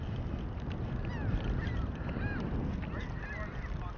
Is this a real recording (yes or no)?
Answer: yes